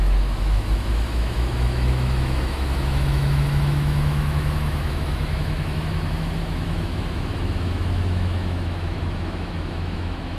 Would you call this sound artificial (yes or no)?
yes